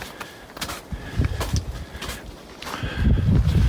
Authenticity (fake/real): real